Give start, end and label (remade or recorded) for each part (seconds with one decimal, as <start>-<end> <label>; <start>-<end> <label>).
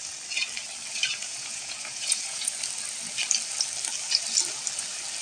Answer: 0.0-1.2 recorded; 1.2-2.5 remade; 2.5-5.2 recorded